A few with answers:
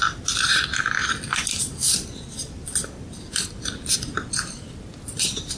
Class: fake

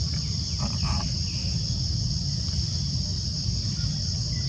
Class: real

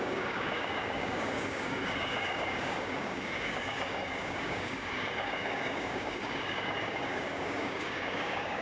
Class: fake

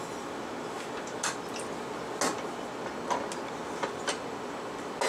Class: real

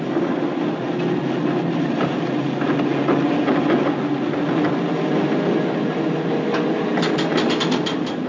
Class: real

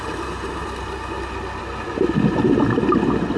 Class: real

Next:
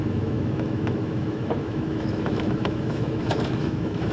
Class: fake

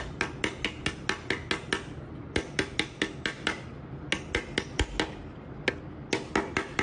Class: real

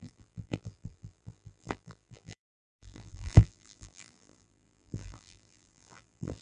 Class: fake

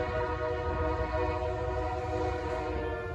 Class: real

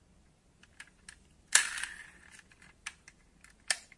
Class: real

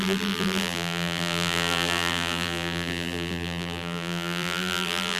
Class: fake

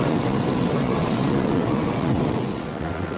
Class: fake